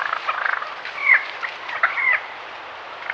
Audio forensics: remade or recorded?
remade